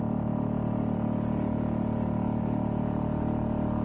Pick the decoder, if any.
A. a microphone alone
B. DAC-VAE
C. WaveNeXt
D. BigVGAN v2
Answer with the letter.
A